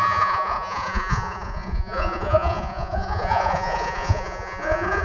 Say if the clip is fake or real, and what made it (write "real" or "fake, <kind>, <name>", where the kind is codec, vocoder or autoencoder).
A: fake, vocoder, Vocos